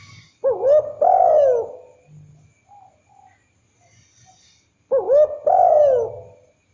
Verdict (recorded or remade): recorded